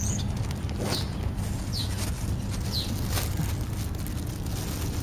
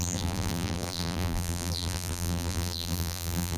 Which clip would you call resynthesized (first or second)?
second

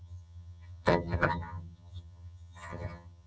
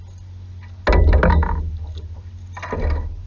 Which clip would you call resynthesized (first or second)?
first